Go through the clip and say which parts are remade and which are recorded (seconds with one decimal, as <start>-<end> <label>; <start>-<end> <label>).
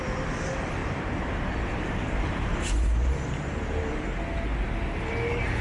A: 0.0-0.8 recorded; 0.8-4.2 remade; 4.2-5.6 recorded